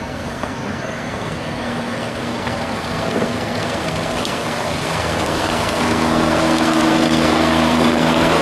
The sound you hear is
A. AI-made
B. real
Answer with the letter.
A